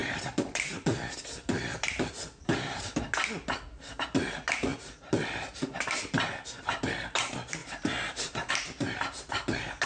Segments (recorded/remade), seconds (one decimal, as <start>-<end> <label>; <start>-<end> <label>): 0.0-3.0 remade; 3.0-4.7 recorded; 4.7-6.1 remade; 6.1-9.9 recorded